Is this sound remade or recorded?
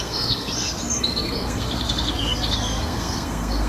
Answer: remade